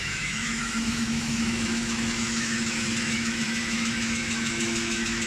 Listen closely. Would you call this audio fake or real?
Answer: fake